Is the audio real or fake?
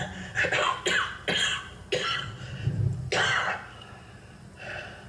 real